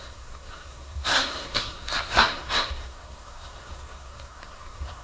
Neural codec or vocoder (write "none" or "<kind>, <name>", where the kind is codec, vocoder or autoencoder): codec, SNAC